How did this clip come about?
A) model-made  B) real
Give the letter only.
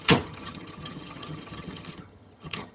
A